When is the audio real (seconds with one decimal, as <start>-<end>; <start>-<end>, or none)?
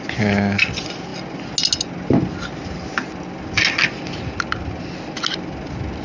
0.0-6.0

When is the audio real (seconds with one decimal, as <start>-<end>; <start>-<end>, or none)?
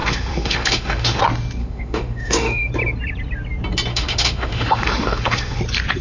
1.2-1.6; 2.7-3.9; 5.6-6.0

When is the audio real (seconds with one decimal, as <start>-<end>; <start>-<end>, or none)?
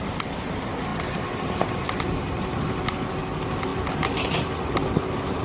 0.0-5.4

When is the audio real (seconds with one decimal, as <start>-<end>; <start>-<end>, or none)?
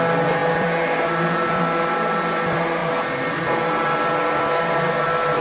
0.0-5.4